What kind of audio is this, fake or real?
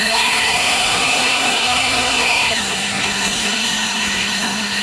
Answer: fake